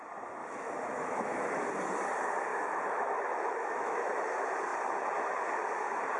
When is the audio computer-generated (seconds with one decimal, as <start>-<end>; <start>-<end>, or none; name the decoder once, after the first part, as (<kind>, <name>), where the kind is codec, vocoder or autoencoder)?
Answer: 0.4-1.6 (autoencoder, DAC-VAE); 2.5-4.3